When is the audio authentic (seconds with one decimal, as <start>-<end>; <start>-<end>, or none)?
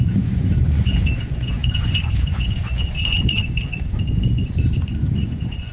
none